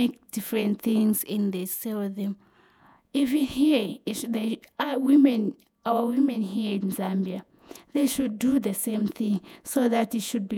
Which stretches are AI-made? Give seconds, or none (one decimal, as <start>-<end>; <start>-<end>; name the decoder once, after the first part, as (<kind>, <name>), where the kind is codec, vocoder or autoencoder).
0.0-1.0 (vocoder, Vocos); 2.8-10.6